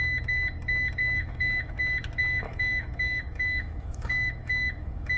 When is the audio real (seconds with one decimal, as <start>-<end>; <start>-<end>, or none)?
0.0-1.0; 1.8-2.2